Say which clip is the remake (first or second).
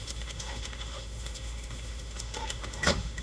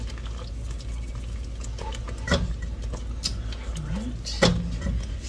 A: first